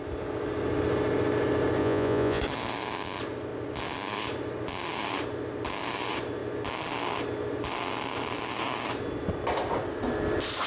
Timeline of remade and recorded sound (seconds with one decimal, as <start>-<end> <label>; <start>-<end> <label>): 0.0-1.8 recorded; 1.8-2.4 remade; 2.4-10.7 recorded